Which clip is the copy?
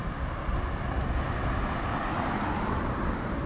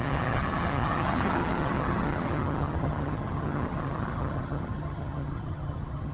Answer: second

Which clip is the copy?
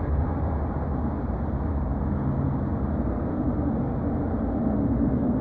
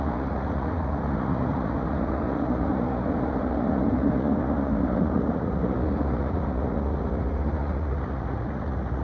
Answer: second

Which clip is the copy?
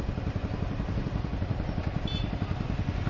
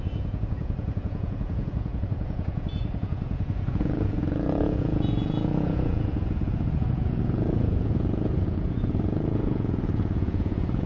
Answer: second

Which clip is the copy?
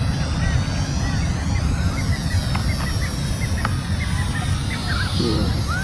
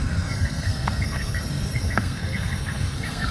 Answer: second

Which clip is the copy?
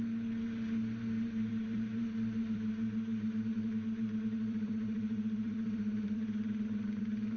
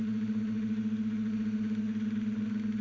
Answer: first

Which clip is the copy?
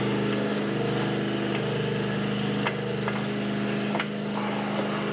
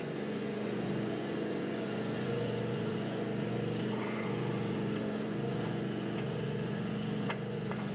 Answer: second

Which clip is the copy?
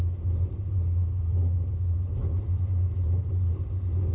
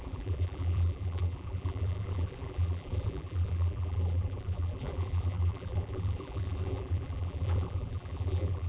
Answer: second